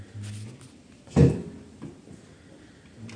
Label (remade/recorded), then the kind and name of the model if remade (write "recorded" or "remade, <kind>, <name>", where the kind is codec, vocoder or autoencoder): recorded